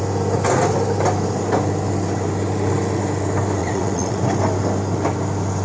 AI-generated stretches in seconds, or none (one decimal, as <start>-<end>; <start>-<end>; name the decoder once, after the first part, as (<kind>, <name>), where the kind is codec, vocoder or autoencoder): 3.6-4.2 (vocoder, WaveNeXt)